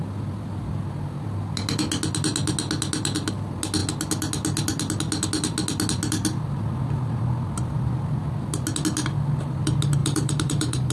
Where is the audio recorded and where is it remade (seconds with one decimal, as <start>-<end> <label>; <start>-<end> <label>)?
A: 0.0-10.0 recorded; 10.0-10.9 remade